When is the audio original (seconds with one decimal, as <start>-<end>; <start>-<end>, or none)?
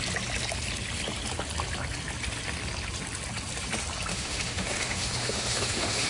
0.0-4.1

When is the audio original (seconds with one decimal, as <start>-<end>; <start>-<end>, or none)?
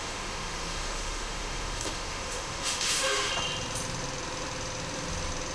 3.3-5.5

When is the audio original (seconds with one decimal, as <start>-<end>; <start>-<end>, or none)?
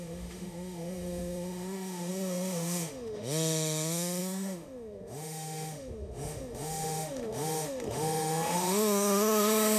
none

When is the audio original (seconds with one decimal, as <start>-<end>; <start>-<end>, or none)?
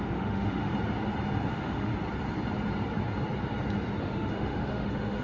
0.7-1.5; 1.9-4.0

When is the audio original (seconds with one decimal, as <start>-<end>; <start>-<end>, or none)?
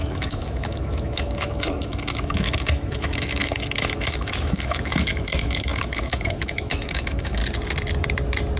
7.4-8.6